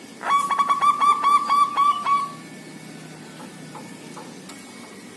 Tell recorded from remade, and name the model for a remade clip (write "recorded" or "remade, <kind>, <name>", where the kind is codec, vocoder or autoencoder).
recorded